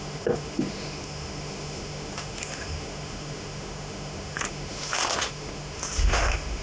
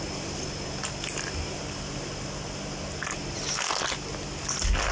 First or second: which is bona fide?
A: second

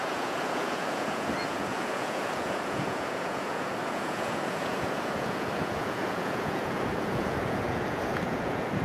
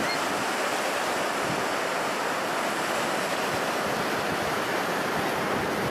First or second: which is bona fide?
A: second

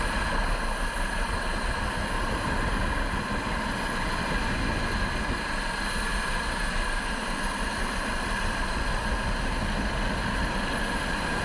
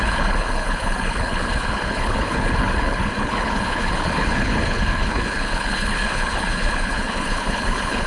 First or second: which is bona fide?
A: first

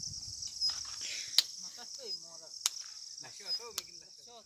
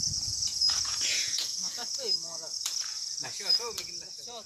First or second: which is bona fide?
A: first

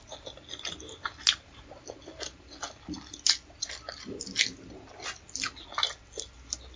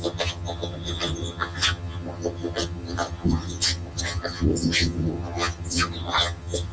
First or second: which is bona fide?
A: first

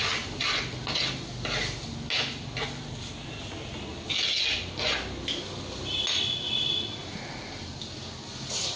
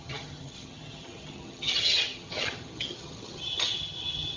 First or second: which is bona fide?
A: first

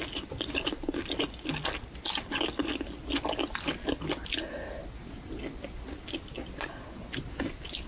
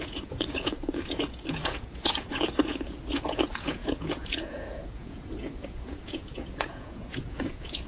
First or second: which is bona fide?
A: first